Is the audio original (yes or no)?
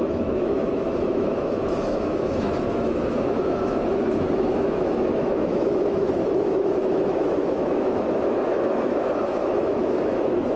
no